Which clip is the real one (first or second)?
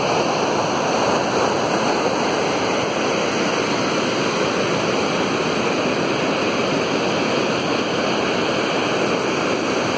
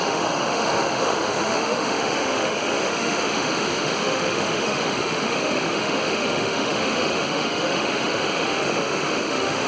first